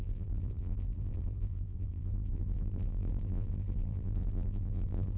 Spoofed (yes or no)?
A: yes